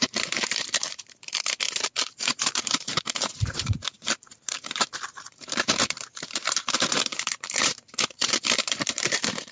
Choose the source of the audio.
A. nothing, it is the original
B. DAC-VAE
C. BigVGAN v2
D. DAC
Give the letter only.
C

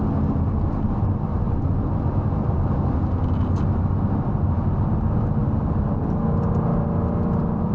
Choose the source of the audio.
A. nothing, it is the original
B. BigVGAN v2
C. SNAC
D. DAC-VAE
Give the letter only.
A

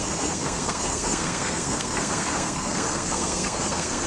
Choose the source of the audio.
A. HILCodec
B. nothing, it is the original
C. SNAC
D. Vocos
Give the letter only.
C